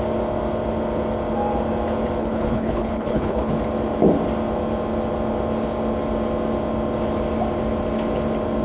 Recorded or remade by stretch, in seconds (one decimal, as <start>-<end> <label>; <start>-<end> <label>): 0.0-2.2 recorded; 2.2-3.5 remade; 3.5-8.6 recorded

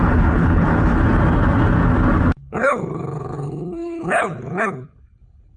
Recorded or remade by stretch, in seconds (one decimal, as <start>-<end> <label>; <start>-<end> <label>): 0.0-0.9 remade; 0.9-2.3 recorded; 2.3-5.6 remade